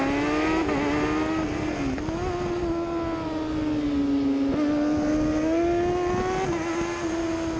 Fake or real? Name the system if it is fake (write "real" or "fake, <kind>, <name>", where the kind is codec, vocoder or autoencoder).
real